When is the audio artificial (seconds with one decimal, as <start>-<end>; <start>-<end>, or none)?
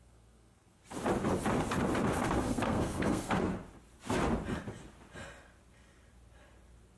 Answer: 0.0-0.8; 2.1-3.5